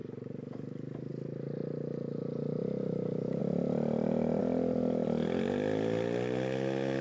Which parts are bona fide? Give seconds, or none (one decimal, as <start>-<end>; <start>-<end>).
1.1-7.0

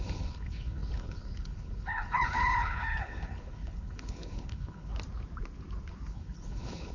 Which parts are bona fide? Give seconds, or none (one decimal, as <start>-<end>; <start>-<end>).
4.9-6.1

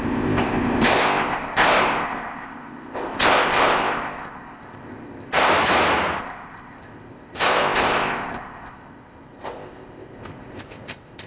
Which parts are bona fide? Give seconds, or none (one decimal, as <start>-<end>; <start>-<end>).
5.5-6.2

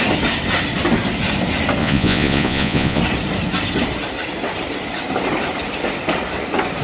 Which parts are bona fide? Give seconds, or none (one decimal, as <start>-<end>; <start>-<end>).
0.0-1.8; 3.0-6.8

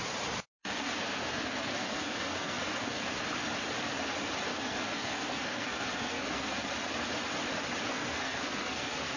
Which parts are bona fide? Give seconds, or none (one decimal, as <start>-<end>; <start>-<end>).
0.0-0.6; 3.2-4.5; 6.7-7.9

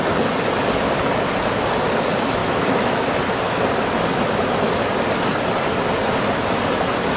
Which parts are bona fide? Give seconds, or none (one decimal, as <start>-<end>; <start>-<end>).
0.0-2.4; 3.1-7.2

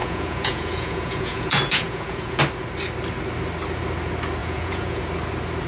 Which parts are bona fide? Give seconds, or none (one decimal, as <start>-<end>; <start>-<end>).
2.4-4.4; 5.0-5.7